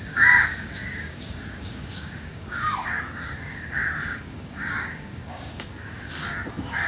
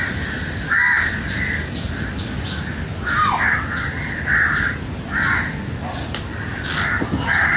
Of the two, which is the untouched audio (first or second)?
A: second